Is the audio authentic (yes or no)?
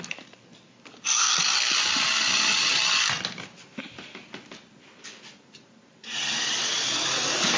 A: yes